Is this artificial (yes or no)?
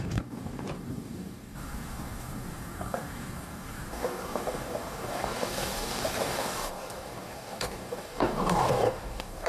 yes